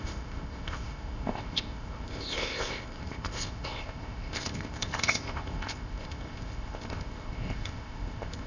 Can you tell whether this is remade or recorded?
remade